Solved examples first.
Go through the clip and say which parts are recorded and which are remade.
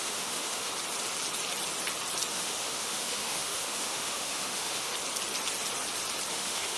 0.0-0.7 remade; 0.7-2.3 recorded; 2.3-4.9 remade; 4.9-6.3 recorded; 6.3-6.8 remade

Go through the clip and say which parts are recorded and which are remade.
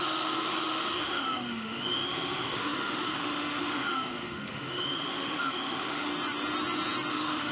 0.0-6.1 remade; 6.1-7.1 recorded; 7.1-7.5 remade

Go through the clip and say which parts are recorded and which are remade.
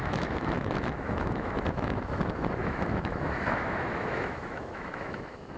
0.0-5.6 remade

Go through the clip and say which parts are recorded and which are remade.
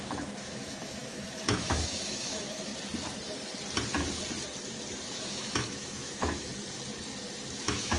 0.0-2.7 remade; 2.7-5.1 recorded; 5.1-6.5 remade; 6.5-7.5 recorded; 7.5-8.0 remade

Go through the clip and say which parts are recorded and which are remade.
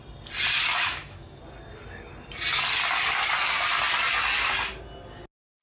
0.0-0.7 recorded; 0.7-1.4 remade; 1.4-5.6 recorded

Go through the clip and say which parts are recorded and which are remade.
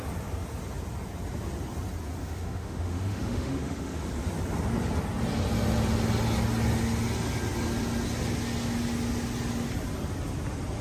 0.0-2.2 recorded; 2.2-4.1 remade; 4.1-10.8 recorded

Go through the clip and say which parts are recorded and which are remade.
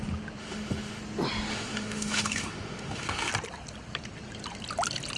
0.0-0.4 recorded; 0.4-1.0 remade; 1.0-1.5 recorded; 1.5-3.3 remade; 3.3-5.2 recorded